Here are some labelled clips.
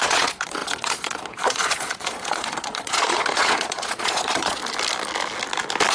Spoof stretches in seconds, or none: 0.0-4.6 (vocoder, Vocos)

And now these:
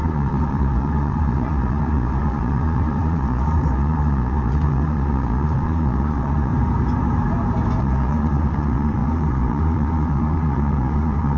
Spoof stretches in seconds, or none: 0.0-6.5 (vocoder, Vocos); 7.8-11.4

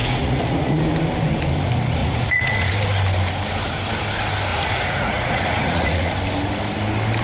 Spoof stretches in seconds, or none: 0.0-0.8 (vocoder, Vocos); 2.0-2.7; 4.5-6.1

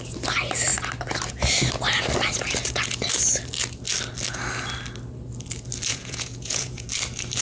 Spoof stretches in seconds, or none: 5.9-6.9 (vocoder, Vocos)

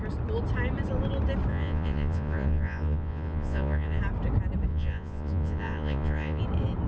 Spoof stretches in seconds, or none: 1.5-4.0 (vocoder, Vocos); 4.7-6.4